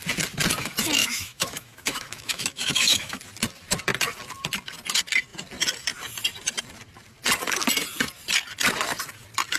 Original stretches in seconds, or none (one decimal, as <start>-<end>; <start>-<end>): 0.0-1.0; 3.2-9.6